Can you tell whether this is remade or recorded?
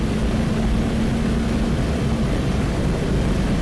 recorded